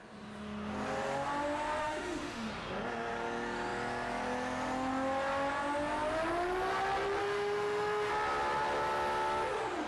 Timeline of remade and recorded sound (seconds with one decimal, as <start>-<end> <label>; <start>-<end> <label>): 0.0-1.8 recorded; 1.8-2.5 remade; 2.5-7.2 recorded; 7.2-8.1 remade; 8.1-9.9 recorded